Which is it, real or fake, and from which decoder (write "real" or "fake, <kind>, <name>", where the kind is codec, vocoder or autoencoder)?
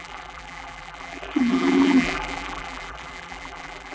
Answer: fake, vocoder, BigVGAN v2